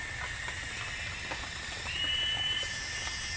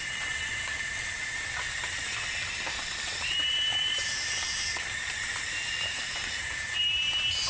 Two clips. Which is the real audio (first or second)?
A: first